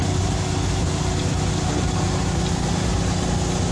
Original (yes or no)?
yes